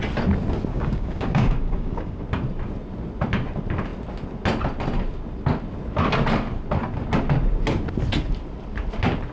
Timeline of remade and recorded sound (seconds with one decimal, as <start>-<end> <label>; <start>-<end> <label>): 0.0-0.7 recorded; 0.7-2.2 remade; 2.2-9.3 recorded